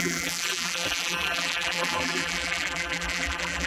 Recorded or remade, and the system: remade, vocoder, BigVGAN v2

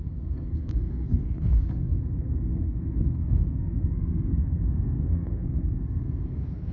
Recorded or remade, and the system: remade, codec, SNAC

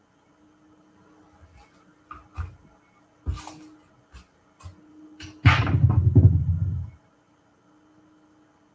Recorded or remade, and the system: recorded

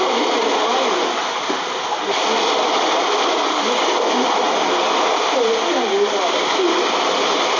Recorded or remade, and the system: recorded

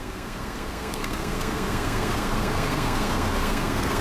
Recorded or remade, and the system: remade, codec, SNAC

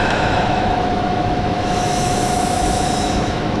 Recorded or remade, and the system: remade, autoencoder, DAC-VAE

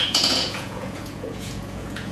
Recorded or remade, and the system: remade, vocoder, Vocos